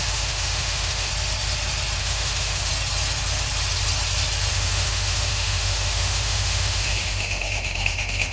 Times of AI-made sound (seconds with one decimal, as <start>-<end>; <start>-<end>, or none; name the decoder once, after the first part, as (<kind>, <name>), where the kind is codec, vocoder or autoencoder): 0.0-1.1 (autoencoder, DAC-VAE); 2.0-2.7; 4.5-8.3